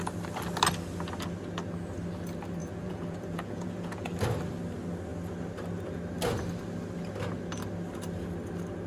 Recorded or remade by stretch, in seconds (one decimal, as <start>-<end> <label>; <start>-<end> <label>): 0.0-2.6 recorded; 2.6-4.1 remade; 4.1-8.9 recorded